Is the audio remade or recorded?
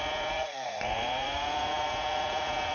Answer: remade